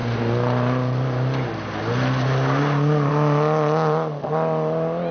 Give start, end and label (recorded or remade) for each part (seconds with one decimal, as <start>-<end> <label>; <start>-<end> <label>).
0.0-5.1 recorded